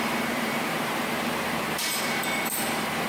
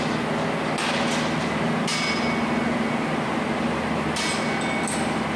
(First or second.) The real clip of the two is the second